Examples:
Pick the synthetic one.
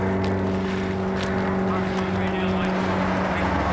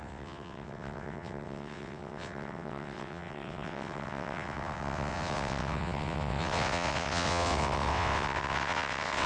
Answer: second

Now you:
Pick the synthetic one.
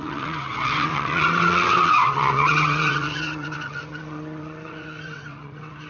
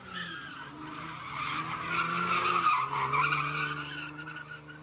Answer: first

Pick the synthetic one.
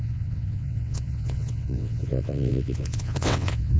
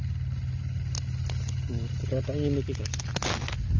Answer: first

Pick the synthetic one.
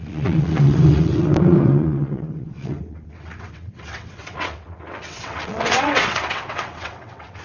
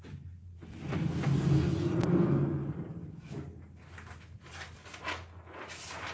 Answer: first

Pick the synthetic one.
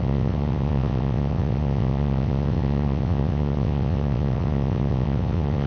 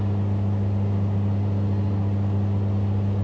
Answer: first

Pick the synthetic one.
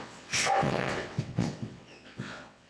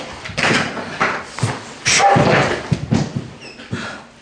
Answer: first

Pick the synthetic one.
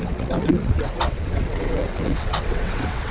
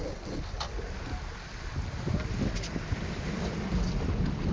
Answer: first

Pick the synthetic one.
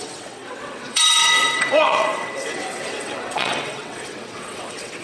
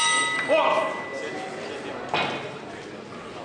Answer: first